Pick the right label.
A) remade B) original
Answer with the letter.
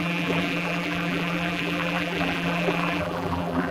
A